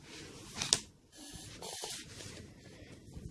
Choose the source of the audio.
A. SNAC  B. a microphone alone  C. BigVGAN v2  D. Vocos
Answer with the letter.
B